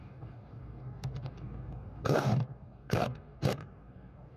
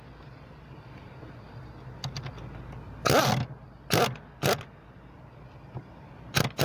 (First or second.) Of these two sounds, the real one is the second